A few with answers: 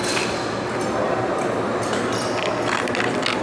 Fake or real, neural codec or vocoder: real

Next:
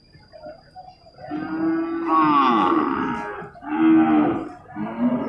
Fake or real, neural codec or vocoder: real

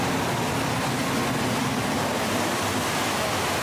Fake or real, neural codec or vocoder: real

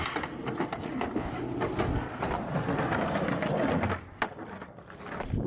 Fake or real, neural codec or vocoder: real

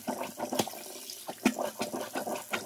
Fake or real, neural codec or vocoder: real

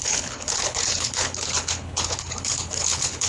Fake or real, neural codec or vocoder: fake, codec, HILCodec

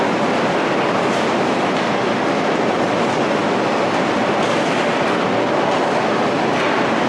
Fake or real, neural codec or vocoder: real